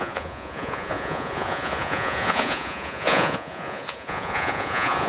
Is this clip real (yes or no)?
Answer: no